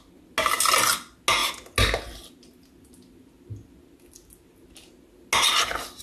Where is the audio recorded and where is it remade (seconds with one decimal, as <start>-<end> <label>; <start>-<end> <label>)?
0.0-6.0 recorded